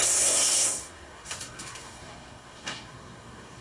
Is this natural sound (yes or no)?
no